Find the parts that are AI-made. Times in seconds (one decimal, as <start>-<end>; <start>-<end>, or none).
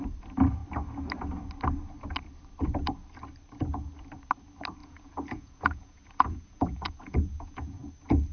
4.8-7.9